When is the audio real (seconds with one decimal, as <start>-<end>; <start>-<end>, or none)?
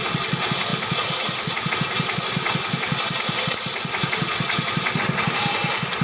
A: 0.0-6.0